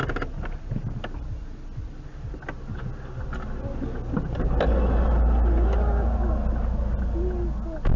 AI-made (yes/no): no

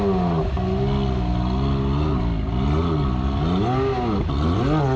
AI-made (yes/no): no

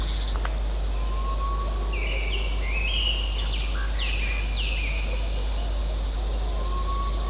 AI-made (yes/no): no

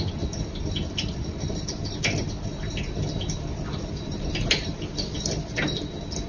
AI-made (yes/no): no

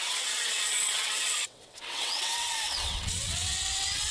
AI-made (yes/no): yes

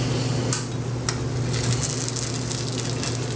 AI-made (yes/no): no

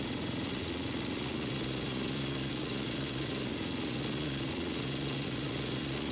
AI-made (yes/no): yes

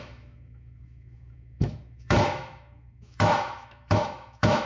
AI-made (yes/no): yes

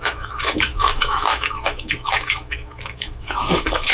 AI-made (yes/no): yes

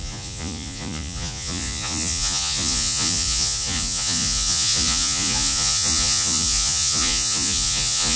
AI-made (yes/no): yes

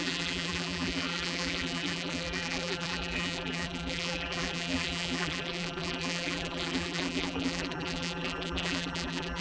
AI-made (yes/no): yes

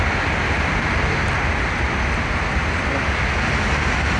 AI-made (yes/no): no